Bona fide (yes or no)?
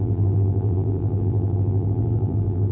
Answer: no